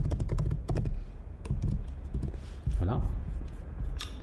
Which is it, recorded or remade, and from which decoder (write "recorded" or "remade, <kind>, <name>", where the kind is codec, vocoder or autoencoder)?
remade, vocoder, Vocos